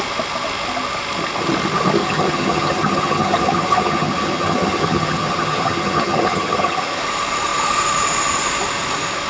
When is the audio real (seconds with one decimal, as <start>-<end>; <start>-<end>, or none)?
0.0-2.0; 7.0-9.3